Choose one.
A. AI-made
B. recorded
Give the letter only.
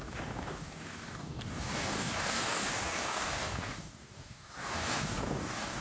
A